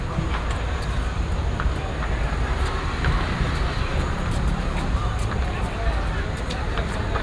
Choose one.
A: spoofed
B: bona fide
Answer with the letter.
B